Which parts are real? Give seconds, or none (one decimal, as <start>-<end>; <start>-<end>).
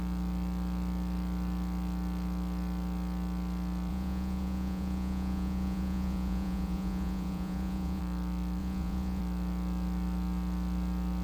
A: 0.0-3.9; 8.0-8.6; 9.2-11.2